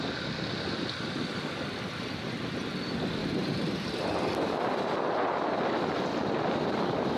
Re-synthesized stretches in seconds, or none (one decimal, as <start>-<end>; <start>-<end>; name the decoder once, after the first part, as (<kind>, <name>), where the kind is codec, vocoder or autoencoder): 3.2-4.1 (vocoder, BigVGAN v2)